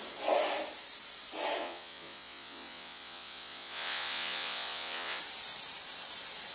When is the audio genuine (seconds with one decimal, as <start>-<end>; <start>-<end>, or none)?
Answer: 0.0-1.6; 5.2-6.5